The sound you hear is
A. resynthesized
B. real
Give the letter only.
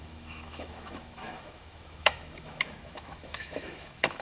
A